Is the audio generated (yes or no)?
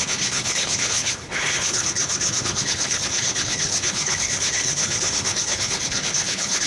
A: yes